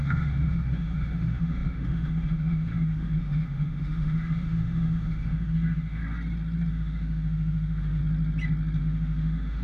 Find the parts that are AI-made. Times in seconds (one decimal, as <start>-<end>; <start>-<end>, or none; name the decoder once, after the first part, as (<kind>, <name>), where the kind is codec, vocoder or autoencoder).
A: 0.0-6.0 (autoencoder, DAC-VAE); 6.7-8.0; 8.8-9.6

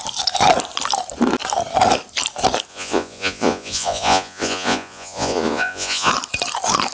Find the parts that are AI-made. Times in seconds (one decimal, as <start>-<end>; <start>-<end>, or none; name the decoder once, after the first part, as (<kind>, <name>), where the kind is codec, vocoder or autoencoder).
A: 2.7-6.1 (vocoder, Vocos)

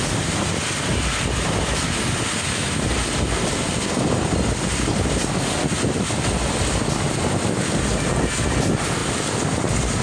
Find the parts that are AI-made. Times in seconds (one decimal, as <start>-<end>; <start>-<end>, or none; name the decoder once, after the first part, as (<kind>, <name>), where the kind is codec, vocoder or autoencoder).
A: none

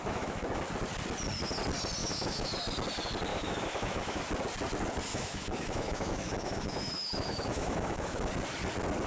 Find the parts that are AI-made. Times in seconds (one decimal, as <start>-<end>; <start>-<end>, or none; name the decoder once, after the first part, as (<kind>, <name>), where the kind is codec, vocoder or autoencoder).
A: 0.0-0.6 (autoencoder, DAC-VAE); 2.0-2.5; 3.3-4.2; 5.1-8.3